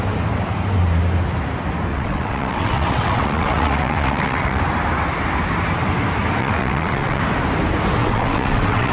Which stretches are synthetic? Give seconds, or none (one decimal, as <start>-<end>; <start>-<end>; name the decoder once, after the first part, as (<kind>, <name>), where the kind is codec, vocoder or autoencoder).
1.9-4.6 (vocoder, WaveNeXt); 6.4-7.2; 8.0-8.9